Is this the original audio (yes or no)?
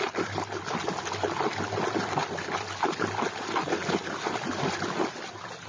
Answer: yes